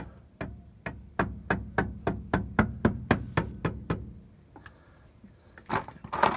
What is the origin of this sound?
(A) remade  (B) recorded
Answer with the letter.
B